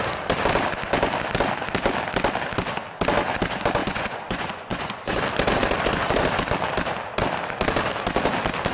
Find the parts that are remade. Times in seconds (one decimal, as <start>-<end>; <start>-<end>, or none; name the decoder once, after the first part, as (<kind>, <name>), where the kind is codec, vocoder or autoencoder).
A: 3.8-5.2 (vocoder, Vocos)